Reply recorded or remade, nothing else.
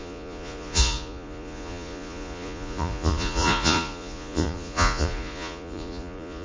remade